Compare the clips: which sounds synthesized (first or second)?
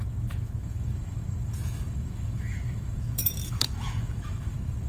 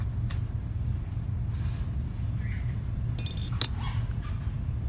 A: first